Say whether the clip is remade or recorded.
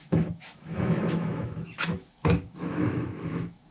remade